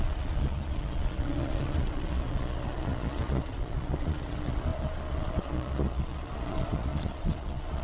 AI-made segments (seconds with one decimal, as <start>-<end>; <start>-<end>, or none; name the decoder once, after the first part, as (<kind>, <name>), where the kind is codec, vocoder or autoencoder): 0.0-7.8 (vocoder, Vocos)